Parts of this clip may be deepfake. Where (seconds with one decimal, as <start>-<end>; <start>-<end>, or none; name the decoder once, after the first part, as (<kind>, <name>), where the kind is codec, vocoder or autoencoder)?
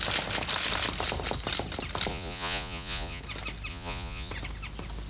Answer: 2.1-3.2 (vocoder, Vocos); 3.7-4.3